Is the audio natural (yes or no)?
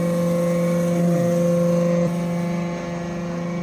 yes